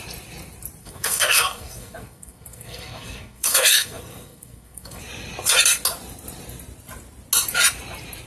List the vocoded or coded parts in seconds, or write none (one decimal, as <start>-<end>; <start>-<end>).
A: 0.8-5.0